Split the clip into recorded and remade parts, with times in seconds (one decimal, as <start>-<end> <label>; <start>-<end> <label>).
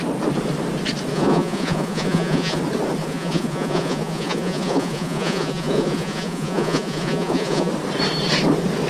0.0-1.1 recorded; 1.1-2.6 remade; 2.6-3.0 recorded; 3.0-7.7 remade; 7.7-8.9 recorded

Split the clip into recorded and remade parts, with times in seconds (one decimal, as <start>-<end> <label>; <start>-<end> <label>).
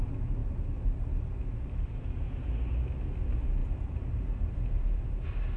0.0-5.6 recorded